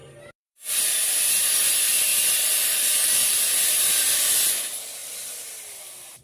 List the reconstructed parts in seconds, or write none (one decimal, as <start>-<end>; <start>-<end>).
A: 0.0-0.8; 2.1-4.6; 5.0-6.2